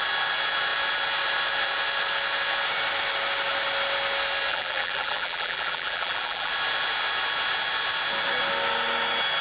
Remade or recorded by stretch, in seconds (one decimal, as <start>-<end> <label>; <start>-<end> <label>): 0.0-4.5 recorded; 4.5-6.5 remade; 6.5-9.4 recorded